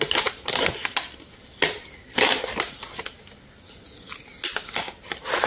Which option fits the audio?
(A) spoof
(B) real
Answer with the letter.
B